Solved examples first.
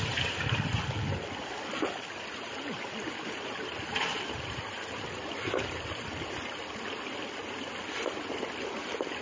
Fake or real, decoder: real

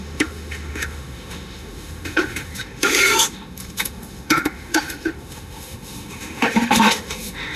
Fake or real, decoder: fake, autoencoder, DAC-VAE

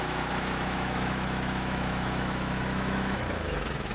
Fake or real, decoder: fake, autoencoder, DAC-VAE